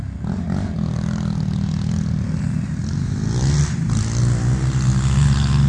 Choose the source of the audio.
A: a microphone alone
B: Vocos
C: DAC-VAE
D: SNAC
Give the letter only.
A